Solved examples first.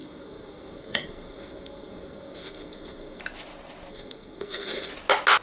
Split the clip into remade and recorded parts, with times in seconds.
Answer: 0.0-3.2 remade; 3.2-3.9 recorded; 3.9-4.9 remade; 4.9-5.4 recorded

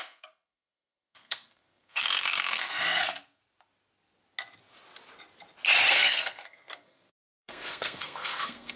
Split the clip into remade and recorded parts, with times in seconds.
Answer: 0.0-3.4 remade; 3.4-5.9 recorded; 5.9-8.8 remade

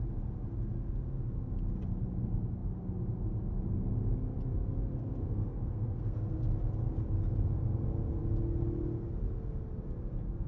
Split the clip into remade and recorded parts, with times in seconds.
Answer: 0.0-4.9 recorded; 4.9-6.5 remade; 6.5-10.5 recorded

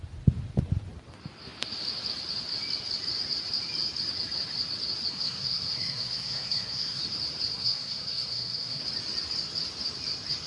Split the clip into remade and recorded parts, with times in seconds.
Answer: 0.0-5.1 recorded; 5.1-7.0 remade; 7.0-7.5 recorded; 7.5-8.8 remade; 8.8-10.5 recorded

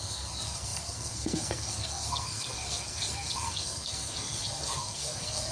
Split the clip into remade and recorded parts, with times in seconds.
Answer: 0.0-5.5 remade

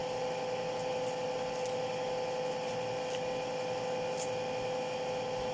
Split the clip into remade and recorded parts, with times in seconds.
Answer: 0.0-5.5 recorded

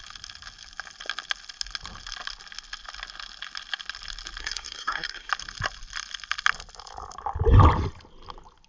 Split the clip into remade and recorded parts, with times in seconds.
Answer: 0.0-4.4 recorded; 4.4-5.3 remade; 5.3-8.7 recorded

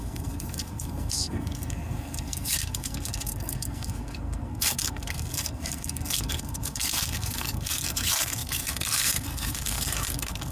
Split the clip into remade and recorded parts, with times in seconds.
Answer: 0.0-10.5 remade